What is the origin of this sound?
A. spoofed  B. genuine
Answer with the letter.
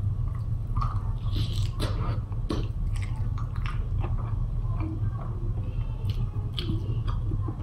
B